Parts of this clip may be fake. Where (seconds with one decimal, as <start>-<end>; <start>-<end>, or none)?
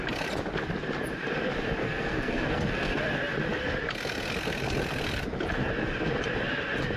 1.8-3.0